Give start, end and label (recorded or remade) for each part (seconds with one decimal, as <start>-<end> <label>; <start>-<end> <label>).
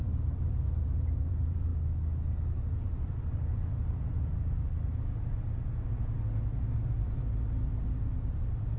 0.0-1.7 remade; 1.7-2.9 recorded; 2.9-4.3 remade; 4.3-6.6 recorded; 6.6-8.8 remade